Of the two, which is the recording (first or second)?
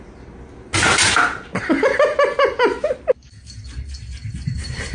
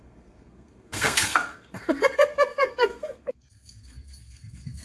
first